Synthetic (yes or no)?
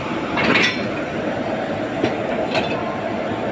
no